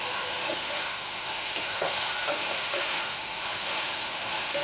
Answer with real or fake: fake